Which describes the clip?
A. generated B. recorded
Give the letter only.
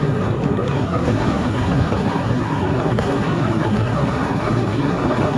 A